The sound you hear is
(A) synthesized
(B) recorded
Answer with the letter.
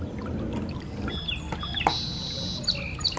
B